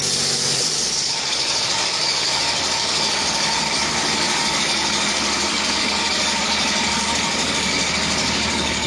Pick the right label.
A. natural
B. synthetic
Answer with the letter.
B